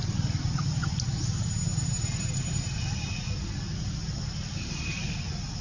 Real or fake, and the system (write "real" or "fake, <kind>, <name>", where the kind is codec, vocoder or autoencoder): real